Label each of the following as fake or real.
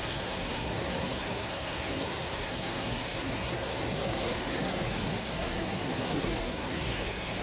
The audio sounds fake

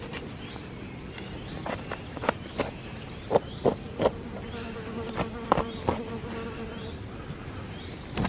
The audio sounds real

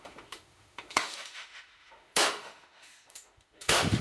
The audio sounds fake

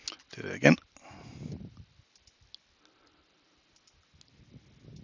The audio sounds real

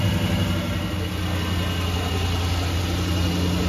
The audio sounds real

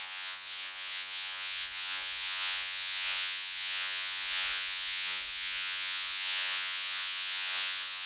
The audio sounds fake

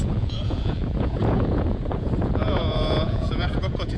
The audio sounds fake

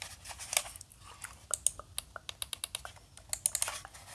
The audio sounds real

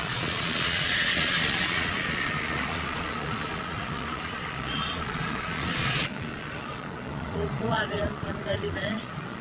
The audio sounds fake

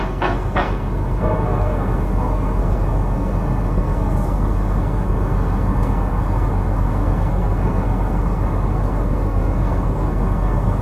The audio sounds fake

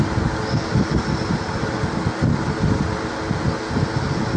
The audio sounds real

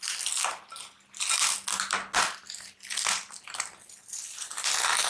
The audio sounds real